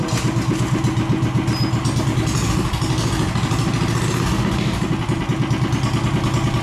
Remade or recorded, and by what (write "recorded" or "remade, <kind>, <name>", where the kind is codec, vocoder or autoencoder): recorded